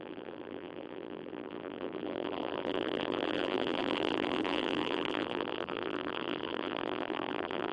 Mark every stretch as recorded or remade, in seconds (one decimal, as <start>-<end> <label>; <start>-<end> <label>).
0.0-7.7 remade